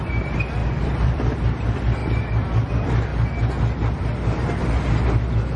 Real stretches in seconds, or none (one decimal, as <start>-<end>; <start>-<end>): 0.0-0.6; 1.3-2.0; 2.7-5.6